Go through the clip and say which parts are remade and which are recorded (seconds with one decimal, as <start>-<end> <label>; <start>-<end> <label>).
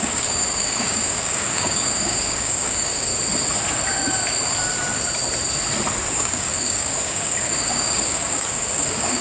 0.0-3.1 remade; 3.1-6.1 recorded; 6.1-9.2 remade